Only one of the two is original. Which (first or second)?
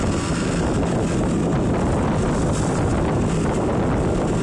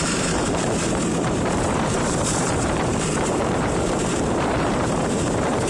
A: first